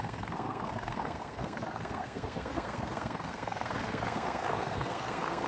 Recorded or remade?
remade